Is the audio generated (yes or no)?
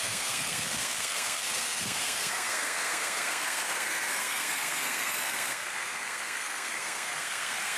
yes